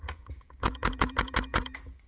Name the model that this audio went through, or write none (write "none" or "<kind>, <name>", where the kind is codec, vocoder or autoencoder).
vocoder, Vocos